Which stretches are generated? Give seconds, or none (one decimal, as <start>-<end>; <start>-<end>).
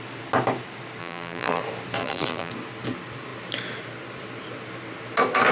1.0-1.6; 2.0-2.5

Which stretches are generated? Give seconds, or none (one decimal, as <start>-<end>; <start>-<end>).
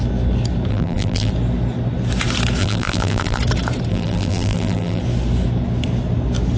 0.7-1.3; 2.6-3.4; 3.9-5.0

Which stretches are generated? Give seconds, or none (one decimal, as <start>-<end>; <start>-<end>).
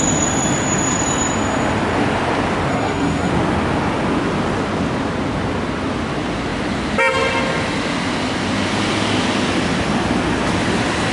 2.7-3.3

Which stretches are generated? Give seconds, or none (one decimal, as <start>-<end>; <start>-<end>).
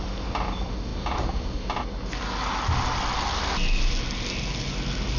none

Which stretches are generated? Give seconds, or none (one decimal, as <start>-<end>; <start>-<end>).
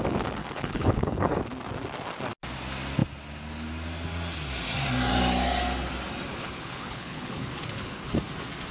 0.4-1.4; 6.3-8.1